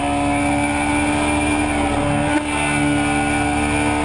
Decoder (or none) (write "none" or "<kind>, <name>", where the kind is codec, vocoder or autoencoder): none